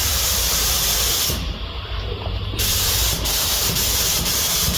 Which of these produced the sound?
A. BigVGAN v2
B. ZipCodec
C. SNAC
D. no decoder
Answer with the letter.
A